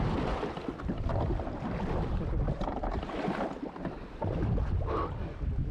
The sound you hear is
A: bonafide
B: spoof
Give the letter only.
A